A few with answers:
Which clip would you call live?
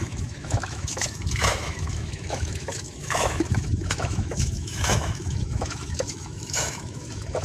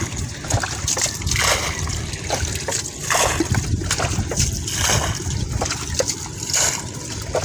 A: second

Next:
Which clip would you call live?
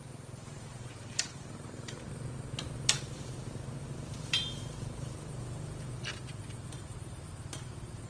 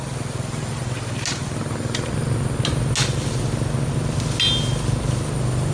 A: second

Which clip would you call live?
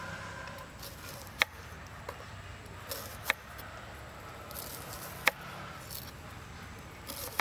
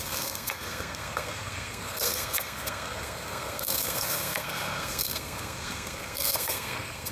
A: first